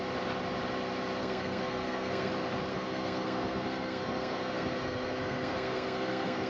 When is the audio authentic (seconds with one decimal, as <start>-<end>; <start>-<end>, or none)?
0.0-1.2; 2.3-2.7